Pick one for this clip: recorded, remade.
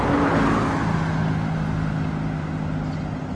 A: recorded